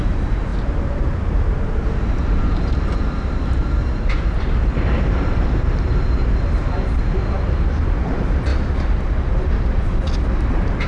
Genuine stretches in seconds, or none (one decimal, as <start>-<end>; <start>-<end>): 8.5-10.5